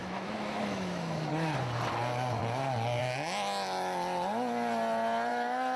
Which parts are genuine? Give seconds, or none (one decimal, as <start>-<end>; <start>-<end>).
1.3-5.3